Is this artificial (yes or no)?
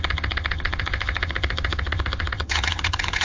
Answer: yes